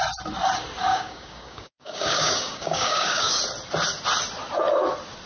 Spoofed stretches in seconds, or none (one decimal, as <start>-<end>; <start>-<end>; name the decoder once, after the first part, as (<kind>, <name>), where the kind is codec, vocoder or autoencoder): 0.9-3.4 (codec, DAC)